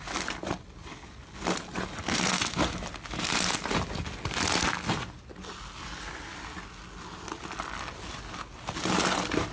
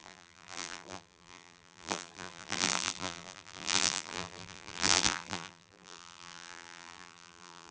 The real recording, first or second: first